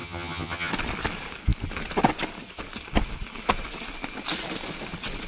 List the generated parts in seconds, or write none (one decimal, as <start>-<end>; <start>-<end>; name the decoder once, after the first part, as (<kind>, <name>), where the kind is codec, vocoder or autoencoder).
0.0-0.7 (vocoder, HiFi-GAN)